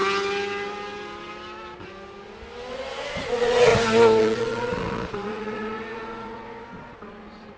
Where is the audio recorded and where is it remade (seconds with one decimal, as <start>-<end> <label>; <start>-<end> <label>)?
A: 0.0-2.7 recorded; 2.7-3.7 remade; 3.7-4.2 recorded; 4.2-7.6 remade